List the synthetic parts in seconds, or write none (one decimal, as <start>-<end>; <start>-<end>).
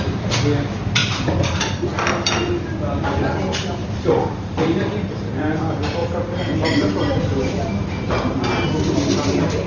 3.8-5.3; 6.0-8.7